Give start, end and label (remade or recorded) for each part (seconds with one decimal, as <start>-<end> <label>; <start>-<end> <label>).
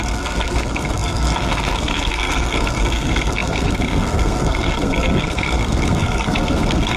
0.0-7.0 remade